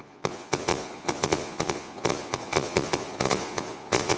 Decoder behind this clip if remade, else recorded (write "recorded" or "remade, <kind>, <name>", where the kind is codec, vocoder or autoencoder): remade, vocoder, Vocos